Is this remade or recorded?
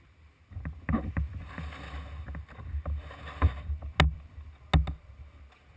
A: recorded